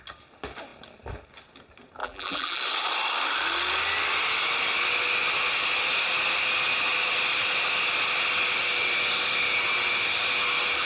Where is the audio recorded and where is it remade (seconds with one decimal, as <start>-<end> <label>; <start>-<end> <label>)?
0.0-2.0 recorded; 2.0-2.6 remade; 2.6-10.8 recorded